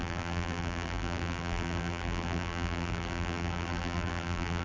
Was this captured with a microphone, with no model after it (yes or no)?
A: no